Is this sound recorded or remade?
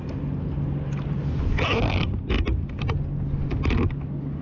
recorded